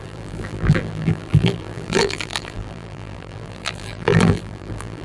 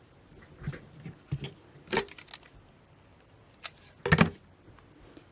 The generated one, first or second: first